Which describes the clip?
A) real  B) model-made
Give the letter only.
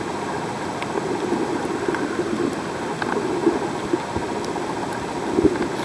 A